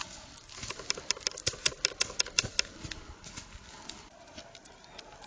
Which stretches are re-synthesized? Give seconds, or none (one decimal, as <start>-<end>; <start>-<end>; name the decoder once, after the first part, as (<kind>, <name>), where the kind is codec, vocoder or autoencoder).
none